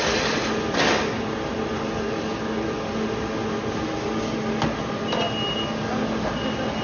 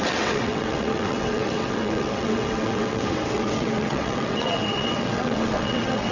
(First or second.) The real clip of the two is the first